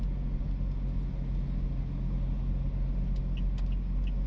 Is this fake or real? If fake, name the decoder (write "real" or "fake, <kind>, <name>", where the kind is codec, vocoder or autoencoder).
real